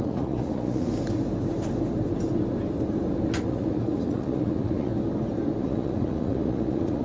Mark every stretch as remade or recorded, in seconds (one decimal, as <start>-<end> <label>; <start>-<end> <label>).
0.0-0.9 remade; 0.9-3.5 recorded; 3.5-4.9 remade; 4.9-5.6 recorded; 5.6-7.0 remade